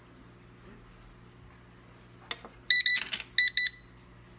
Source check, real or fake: real